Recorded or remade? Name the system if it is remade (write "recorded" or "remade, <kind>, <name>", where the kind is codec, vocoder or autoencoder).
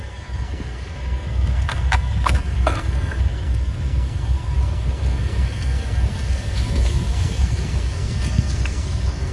remade, codec, SNAC